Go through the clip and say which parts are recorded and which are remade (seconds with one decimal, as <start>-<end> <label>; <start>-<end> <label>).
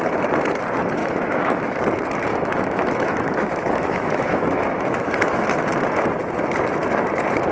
0.0-1.0 recorded; 1.0-1.8 remade; 1.8-2.3 recorded; 2.3-5.4 remade; 5.4-7.5 recorded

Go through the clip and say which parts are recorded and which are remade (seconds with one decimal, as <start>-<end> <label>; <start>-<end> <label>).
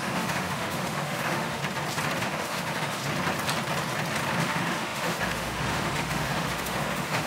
0.0-1.6 remade; 1.6-2.2 recorded; 2.2-3.0 remade; 3.0-4.4 recorded; 4.4-7.3 remade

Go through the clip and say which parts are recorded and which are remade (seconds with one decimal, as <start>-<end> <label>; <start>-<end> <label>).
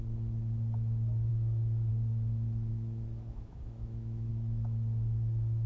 0.0-2.7 recorded; 2.7-4.3 remade; 4.3-5.7 recorded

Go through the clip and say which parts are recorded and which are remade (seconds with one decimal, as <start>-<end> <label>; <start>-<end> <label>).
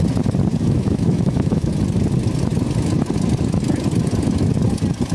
0.0-0.5 recorded; 0.5-1.7 remade; 1.7-5.1 recorded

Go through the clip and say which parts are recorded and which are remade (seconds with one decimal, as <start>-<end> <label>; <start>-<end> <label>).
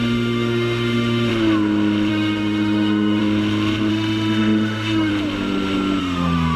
0.0-1.3 remade; 1.3-2.1 recorded; 2.1-3.2 remade; 3.2-3.9 recorded; 3.9-5.1 remade; 5.1-6.0 recorded; 6.0-6.6 remade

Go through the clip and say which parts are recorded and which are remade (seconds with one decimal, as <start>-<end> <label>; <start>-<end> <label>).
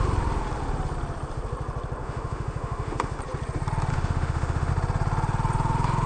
0.0-2.0 recorded; 2.0-3.2 remade; 3.2-3.9 recorded; 3.9-4.7 remade; 4.7-6.1 recorded